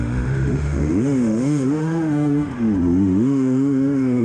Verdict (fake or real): fake